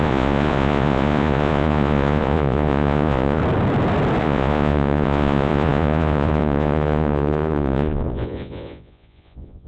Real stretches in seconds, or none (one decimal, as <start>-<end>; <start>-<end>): 3.4-4.2